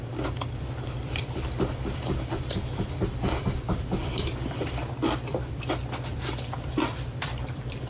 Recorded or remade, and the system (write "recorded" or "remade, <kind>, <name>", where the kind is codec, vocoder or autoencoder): remade, vocoder, BigVGAN v2